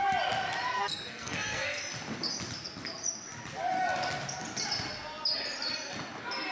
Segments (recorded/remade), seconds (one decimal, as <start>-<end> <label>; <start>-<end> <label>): 0.0-0.7 recorded; 0.7-1.8 remade; 1.8-6.5 recorded